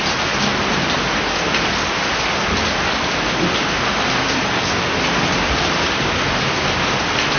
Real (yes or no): yes